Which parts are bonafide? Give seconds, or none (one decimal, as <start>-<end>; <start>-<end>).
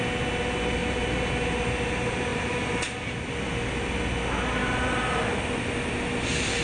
0.0-0.8; 1.3-2.3; 3.3-4.6; 5.3-6.6